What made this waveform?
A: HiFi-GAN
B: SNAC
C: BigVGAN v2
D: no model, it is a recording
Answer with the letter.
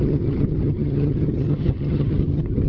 A